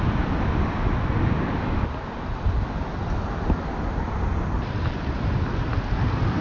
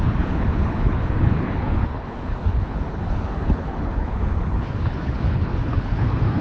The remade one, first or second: second